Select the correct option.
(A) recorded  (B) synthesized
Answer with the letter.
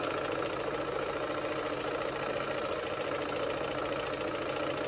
A